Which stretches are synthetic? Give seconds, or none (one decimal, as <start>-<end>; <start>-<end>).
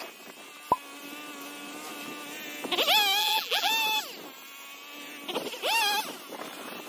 3.2-3.7